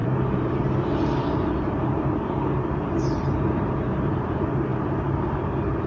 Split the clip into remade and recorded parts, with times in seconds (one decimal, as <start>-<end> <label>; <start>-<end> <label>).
0.0-5.9 remade